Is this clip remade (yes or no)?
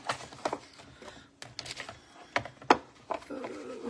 no